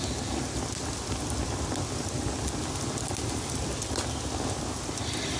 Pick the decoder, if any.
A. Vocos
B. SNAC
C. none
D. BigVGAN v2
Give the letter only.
C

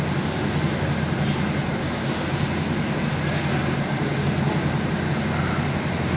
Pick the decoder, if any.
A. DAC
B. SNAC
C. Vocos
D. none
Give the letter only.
D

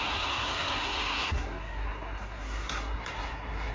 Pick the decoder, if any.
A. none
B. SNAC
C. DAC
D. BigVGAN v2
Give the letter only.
B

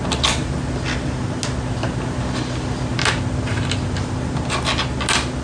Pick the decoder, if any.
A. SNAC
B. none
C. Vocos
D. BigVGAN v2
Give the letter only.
B